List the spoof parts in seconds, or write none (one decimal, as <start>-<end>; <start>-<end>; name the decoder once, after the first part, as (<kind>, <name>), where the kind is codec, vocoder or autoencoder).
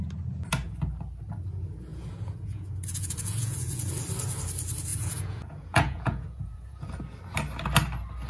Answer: 1.9-3.9 (vocoder, Vocos); 4.9-6.9